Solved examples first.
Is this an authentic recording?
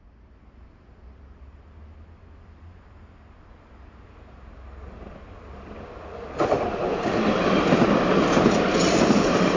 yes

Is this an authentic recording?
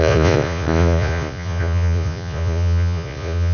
no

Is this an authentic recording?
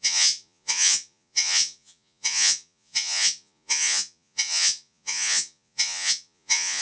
no